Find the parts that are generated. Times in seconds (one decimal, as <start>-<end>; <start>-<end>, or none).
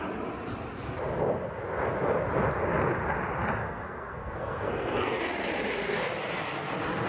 3.6-5.2